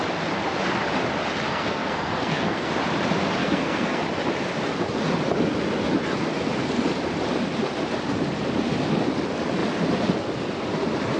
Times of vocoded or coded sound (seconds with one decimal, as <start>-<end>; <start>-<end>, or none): 1.5-2.7; 3.4-4.0